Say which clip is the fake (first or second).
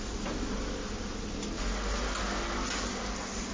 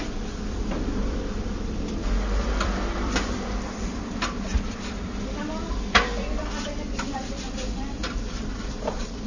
second